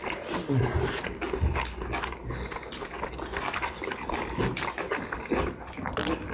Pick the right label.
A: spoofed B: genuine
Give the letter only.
B